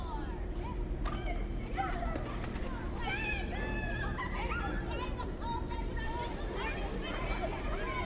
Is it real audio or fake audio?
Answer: real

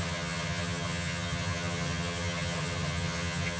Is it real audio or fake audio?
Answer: fake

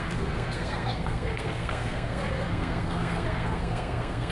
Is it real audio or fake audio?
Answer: fake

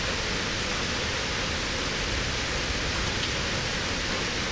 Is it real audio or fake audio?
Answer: real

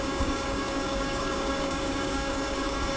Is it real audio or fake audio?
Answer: fake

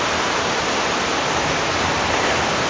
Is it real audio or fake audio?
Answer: real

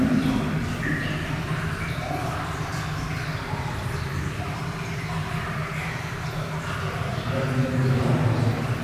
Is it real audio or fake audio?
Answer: real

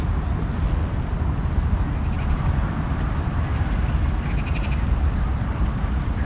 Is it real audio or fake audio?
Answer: real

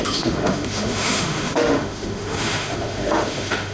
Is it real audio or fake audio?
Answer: fake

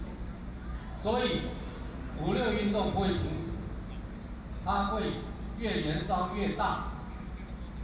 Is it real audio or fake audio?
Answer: real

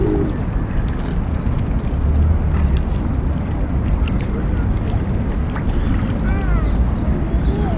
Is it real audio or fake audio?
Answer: real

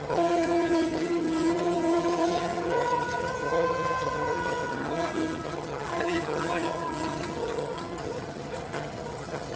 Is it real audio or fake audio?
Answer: fake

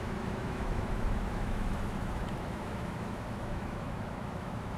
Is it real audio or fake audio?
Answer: fake